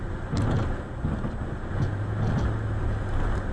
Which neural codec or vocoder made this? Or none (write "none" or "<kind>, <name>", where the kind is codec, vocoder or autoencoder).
none